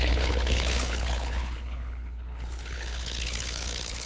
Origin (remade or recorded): remade